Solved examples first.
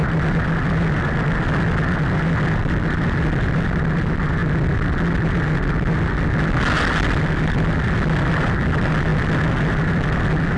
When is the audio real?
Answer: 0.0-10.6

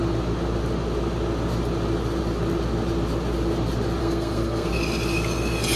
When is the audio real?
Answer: 0.0-4.0; 4.7-5.8

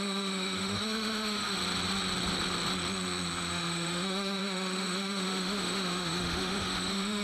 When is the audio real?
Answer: 1.6-3.5

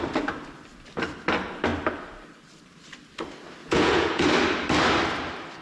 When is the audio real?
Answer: 0.0-3.6; 4.2-5.6

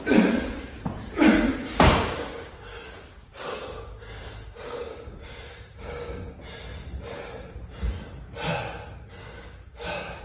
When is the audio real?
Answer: 0.0-1.5; 6.3-9.2

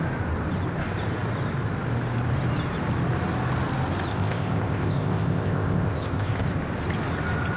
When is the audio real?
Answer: 0.0-4.1; 6.5-7.6